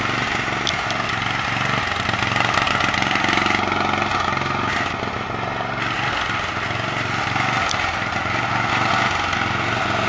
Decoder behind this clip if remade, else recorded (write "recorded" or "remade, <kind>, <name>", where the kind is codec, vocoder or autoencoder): recorded